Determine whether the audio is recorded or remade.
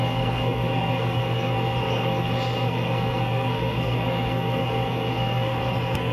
remade